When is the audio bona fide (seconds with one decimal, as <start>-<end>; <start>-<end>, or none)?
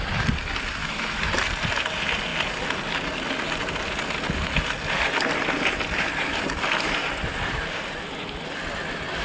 0.0-0.8; 1.3-9.2